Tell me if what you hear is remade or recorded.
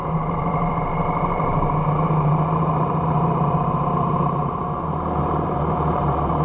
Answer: remade